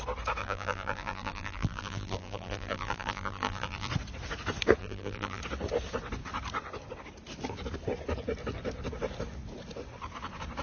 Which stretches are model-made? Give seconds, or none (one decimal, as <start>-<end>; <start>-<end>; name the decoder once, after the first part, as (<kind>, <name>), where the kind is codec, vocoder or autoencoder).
0.4-3.9 (vocoder, BigVGAN v2); 4.8-5.4